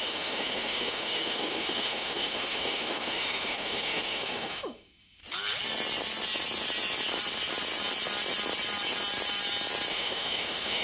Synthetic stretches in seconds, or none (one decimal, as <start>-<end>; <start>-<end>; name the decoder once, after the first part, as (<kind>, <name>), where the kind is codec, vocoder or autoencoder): 0.0-5.2 (autoencoder, DAC-VAE); 9.9-10.8